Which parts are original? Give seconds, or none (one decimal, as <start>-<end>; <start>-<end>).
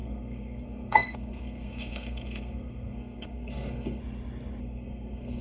4.0-4.6